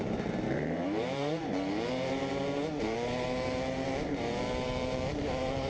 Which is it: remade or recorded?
remade